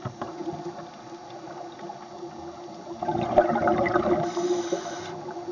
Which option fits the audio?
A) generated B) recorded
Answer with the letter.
B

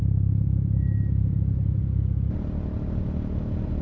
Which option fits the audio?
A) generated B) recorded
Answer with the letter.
B